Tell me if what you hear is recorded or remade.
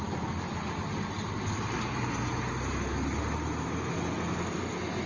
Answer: recorded